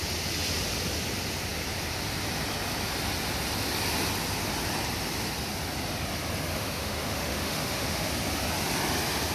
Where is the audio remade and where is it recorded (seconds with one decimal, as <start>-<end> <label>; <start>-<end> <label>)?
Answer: 0.0-6.5 recorded; 6.5-8.1 remade; 8.1-9.3 recorded